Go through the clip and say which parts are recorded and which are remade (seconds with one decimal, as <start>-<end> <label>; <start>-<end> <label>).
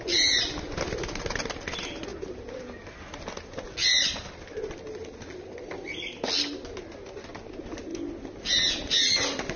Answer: 0.0-9.6 recorded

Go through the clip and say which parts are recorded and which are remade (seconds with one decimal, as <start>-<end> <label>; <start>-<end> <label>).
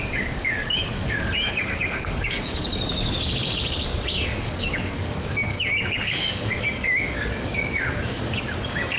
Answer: 0.0-9.0 remade